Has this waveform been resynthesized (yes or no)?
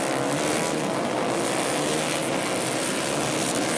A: no